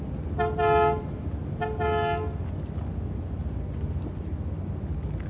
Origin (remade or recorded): recorded